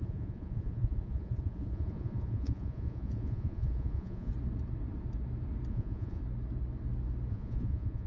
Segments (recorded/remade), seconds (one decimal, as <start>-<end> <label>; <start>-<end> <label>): 0.0-4.3 remade; 4.3-5.7 recorded; 5.7-6.2 remade; 6.2-7.3 recorded; 7.3-8.1 remade